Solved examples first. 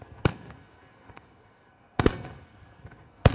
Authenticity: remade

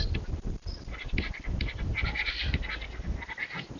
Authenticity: recorded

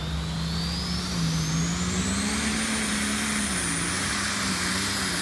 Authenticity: recorded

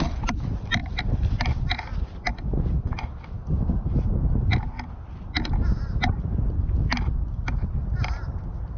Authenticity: recorded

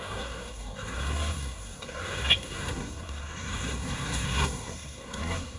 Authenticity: remade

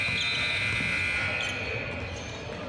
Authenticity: recorded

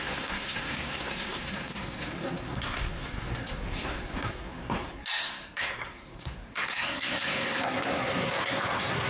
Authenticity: remade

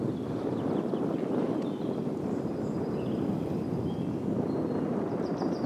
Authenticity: recorded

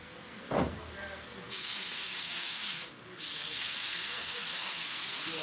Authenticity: remade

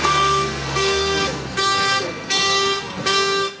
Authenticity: remade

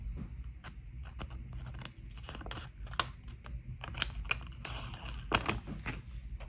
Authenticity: recorded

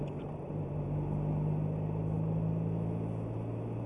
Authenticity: recorded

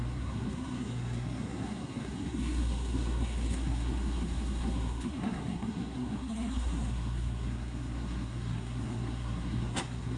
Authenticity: remade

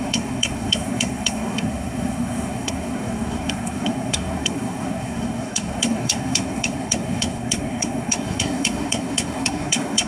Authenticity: remade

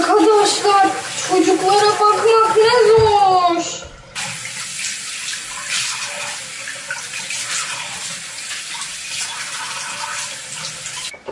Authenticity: recorded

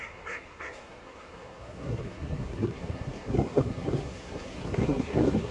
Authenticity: remade